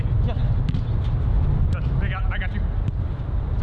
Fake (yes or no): no